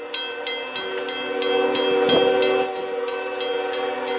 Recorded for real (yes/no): yes